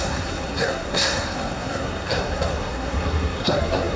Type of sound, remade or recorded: remade